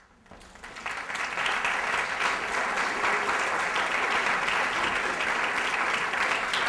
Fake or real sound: real